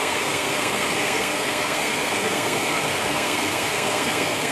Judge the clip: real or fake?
fake